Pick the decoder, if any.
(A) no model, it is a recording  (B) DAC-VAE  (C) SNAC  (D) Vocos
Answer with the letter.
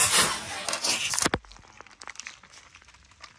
A